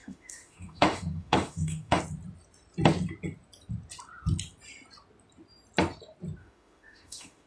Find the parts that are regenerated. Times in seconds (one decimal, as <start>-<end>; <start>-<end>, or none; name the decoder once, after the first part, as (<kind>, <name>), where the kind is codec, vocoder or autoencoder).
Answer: 0.0-2.0 (autoencoder, DAC-VAE); 6.4-7.5